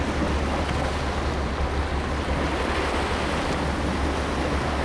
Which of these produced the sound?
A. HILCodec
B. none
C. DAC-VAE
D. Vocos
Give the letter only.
B